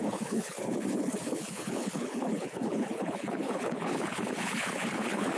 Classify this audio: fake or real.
fake